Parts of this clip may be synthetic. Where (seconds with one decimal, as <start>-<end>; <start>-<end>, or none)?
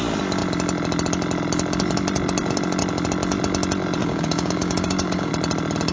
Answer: 4.0-5.3